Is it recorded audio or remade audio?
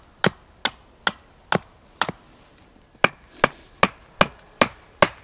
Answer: recorded